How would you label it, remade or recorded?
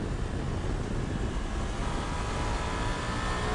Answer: recorded